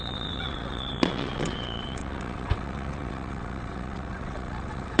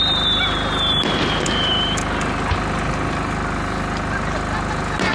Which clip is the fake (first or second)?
first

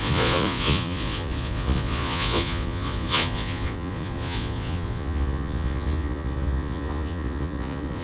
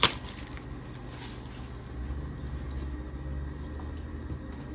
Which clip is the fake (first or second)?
first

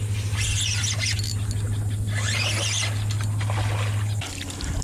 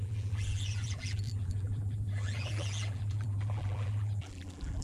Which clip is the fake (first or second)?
second